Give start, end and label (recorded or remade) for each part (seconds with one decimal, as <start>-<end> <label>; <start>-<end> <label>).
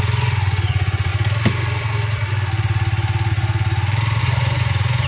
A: 0.0-1.1 remade; 1.1-4.2 recorded; 4.2-5.1 remade